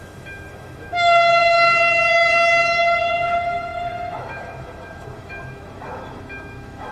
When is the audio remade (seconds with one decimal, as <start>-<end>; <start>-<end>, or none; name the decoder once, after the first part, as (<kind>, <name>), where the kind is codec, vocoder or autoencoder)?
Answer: 0.0-6.9 (autoencoder, DAC-VAE)